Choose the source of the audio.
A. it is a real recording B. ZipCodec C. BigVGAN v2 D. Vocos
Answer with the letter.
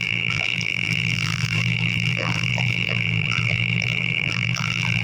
C